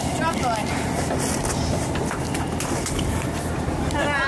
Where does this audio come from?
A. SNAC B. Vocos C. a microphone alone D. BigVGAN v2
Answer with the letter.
C